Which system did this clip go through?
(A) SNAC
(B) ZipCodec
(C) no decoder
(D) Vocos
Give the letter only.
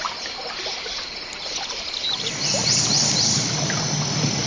C